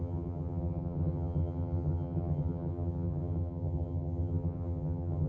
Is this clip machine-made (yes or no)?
yes